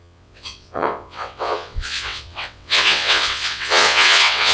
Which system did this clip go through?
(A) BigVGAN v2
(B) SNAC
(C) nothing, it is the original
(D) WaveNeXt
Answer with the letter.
D